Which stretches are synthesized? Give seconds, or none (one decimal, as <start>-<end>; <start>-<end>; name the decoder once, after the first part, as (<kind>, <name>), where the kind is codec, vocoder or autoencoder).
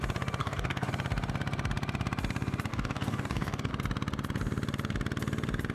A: 0.4-0.9 (codec, DAC); 2.7-3.7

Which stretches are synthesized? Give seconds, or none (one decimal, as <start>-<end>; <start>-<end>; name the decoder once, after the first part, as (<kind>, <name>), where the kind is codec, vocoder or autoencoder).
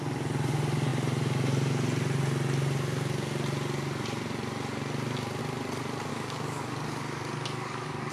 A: 6.1-8.1 (codec, DAC)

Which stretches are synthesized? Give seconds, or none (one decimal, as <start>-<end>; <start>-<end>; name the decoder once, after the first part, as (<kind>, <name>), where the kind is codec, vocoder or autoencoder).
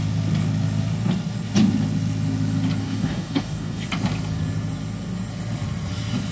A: 2.8-3.9 (codec, DAC)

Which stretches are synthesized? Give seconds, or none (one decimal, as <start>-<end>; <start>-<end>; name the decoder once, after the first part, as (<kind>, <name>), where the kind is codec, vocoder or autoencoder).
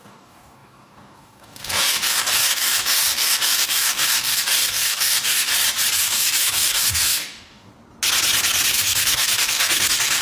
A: 0.0-5.5 (codec, DAC); 6.0-7.7; 8.7-10.2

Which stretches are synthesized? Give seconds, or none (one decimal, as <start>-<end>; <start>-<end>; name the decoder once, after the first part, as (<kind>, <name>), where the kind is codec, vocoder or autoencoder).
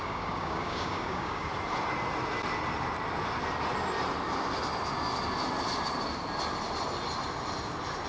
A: 0.0-1.5 (codec, DAC)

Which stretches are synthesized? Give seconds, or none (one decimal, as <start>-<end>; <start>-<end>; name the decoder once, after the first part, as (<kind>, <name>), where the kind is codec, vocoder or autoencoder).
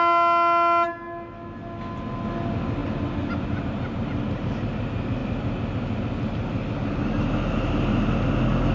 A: none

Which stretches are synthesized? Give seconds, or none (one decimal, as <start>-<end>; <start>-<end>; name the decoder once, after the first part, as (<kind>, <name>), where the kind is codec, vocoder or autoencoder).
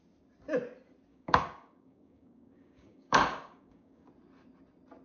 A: 1.1-4.1 (codec, DAC)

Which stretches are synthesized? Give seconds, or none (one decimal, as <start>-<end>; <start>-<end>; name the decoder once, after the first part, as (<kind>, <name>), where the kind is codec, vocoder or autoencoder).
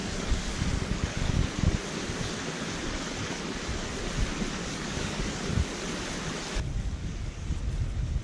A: 0.0-1.5 (codec, DAC); 4.6-5.5; 7.0-7.6